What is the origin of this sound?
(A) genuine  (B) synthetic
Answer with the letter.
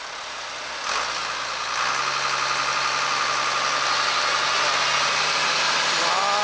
A